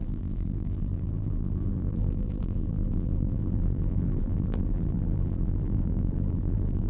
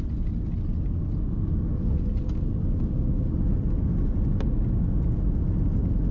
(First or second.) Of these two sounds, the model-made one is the first